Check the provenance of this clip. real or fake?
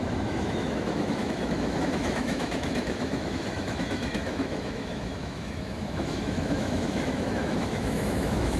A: fake